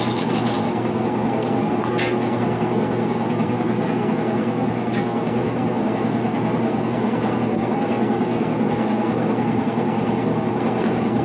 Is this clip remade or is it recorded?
remade